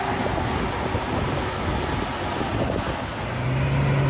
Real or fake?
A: real